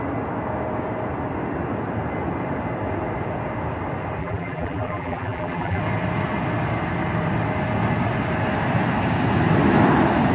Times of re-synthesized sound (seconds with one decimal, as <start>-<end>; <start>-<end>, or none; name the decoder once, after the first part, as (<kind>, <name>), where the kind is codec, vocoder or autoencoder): 4.2-5.8 (vocoder, BigVGAN v2)